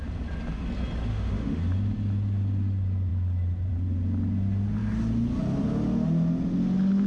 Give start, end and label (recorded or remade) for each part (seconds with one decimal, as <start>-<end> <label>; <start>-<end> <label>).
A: 0.0-1.1 recorded; 1.1-1.6 remade; 1.6-7.1 recorded

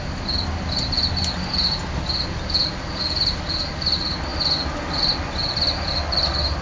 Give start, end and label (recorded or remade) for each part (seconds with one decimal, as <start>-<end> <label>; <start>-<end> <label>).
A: 0.0-6.6 recorded

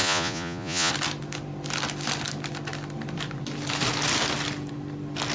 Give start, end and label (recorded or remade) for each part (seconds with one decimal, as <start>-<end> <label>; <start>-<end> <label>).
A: 0.0-0.9 remade; 0.9-5.3 recorded

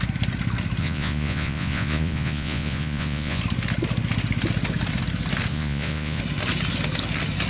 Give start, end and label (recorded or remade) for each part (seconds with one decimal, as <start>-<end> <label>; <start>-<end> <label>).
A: 0.0-0.8 recorded; 0.8-3.4 remade; 3.4-5.5 recorded; 5.5-6.2 remade; 6.2-7.5 recorded

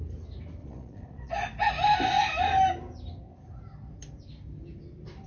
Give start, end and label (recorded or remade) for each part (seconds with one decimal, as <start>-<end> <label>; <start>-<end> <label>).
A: 0.0-0.6 recorded; 0.6-1.3 remade; 1.3-5.3 recorded

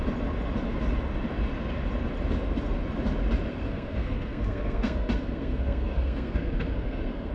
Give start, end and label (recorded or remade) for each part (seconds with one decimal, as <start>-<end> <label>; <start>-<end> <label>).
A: 0.0-3.5 recorded; 3.5-7.3 remade